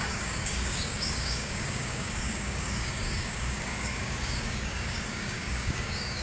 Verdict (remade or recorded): remade